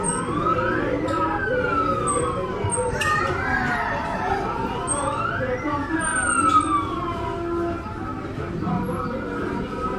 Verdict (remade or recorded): recorded